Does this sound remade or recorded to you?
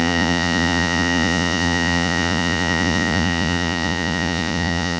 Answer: remade